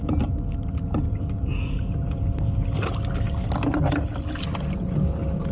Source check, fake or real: real